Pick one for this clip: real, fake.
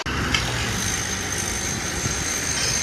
real